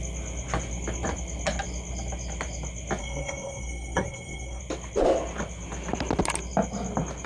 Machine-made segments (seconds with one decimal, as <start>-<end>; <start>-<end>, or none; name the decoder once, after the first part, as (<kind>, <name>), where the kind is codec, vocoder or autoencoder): 3.0-4.6 (codec, SNAC)